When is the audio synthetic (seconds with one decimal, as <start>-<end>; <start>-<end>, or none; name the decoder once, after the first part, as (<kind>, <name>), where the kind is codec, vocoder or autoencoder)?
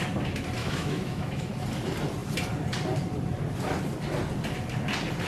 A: 0.6-1.5 (autoencoder, DAC-VAE)